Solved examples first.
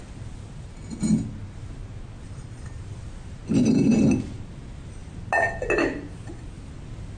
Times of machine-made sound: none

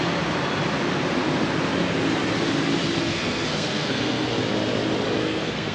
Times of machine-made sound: 3.0-4.3; 5.2-5.7

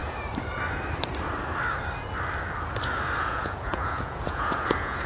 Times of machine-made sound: 3.1-5.1

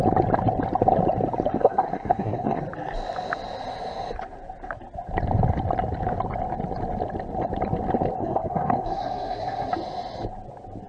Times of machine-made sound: 1.6-2.6; 8.2-9.7

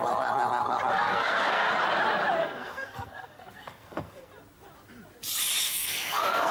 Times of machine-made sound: 0.9-1.7; 2.4-4.3; 5.6-6.5

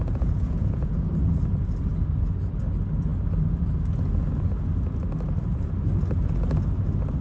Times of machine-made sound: 0.0-1.1

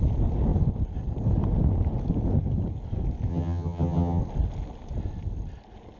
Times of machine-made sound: 3.3-4.2

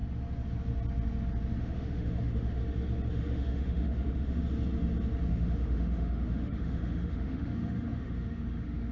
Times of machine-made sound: 1.6-2.6; 3.1-4.4; 5.3-8.9